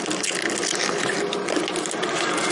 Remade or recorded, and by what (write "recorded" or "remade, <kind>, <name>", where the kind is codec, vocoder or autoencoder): recorded